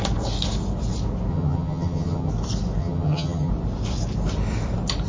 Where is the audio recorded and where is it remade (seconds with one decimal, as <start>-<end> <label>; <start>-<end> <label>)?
0.0-1.3 recorded; 1.3-2.3 remade; 2.3-2.8 recorded; 2.8-3.5 remade; 3.5-5.1 recorded

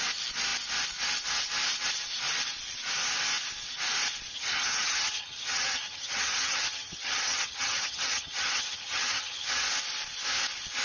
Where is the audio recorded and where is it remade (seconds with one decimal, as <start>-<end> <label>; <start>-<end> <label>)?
0.0-4.3 recorded; 4.3-9.5 remade; 9.5-10.8 recorded

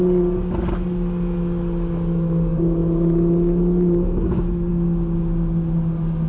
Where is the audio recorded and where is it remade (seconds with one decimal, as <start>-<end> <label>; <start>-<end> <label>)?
0.0-6.3 recorded

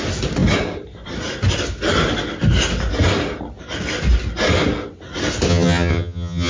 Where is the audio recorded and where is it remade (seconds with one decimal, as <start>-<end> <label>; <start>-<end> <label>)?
0.0-5.5 recorded; 5.5-6.5 remade